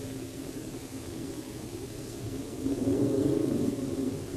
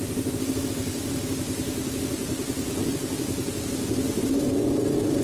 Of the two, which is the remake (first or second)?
first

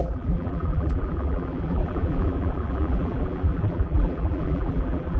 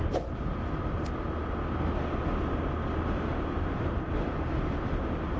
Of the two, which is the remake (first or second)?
first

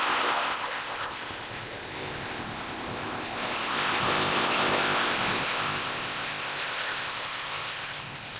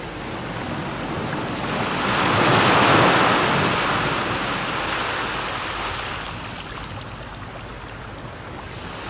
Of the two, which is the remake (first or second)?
first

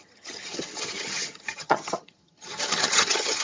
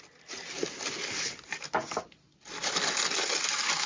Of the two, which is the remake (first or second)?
first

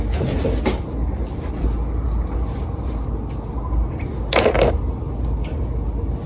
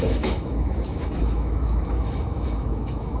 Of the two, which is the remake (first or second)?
second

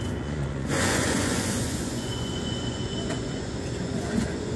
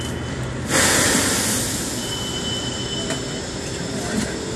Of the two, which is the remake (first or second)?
first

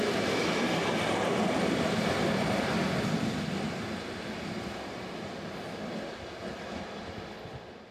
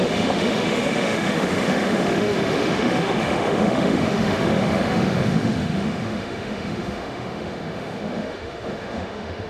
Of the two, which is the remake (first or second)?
second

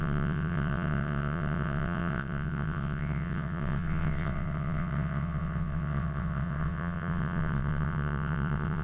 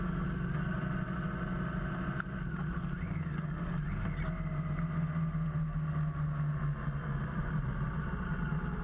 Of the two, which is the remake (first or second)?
first